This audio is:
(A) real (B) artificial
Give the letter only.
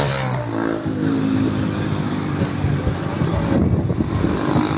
A